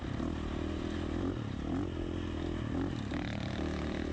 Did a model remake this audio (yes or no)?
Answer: no